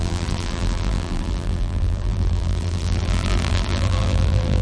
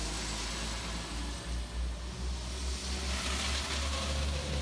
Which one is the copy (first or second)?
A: first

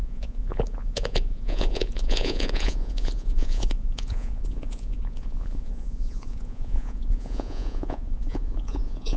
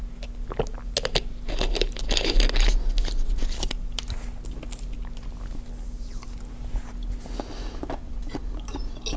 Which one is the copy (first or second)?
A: first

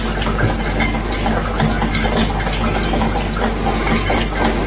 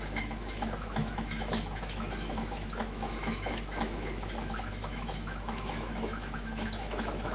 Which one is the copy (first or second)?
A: second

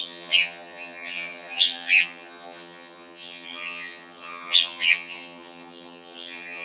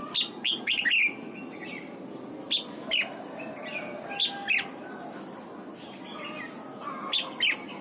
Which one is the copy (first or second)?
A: first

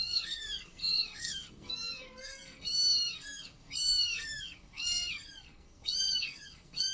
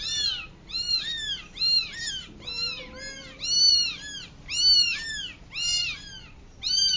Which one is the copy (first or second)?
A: first